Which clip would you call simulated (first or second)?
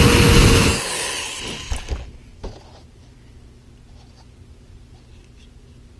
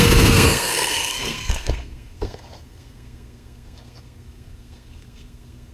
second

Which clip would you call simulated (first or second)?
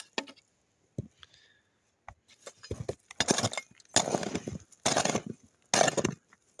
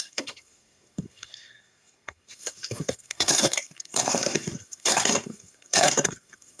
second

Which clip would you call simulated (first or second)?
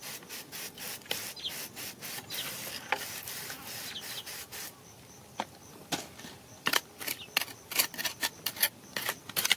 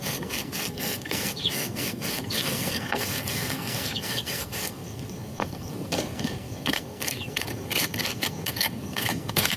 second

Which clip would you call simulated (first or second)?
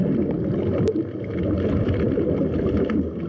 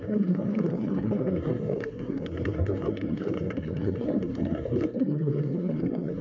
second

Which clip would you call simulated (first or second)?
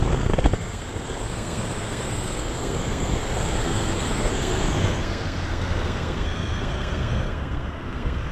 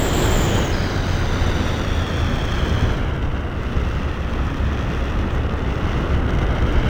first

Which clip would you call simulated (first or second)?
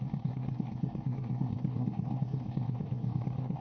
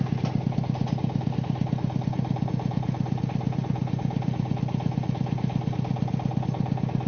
first